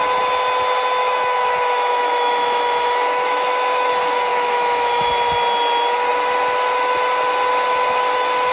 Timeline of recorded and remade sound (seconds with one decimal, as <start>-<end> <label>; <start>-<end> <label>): 0.0-1.0 recorded; 1.0-3.9 remade; 3.9-4.3 recorded; 4.3-5.1 remade; 5.1-8.5 recorded